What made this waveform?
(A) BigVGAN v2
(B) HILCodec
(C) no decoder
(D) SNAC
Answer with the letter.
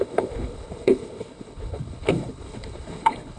B